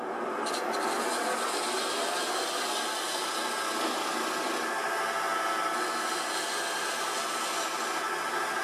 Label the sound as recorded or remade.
recorded